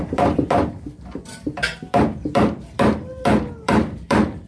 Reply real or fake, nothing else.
fake